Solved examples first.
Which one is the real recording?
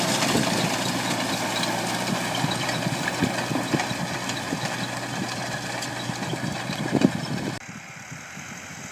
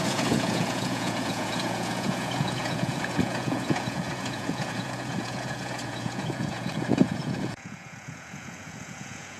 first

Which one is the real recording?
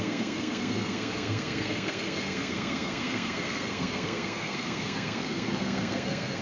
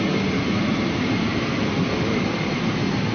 second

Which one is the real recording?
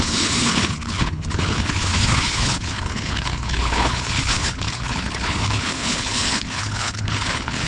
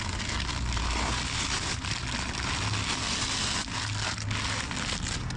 second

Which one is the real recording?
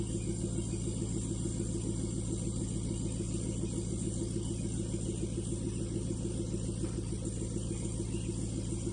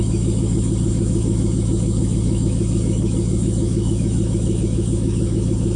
first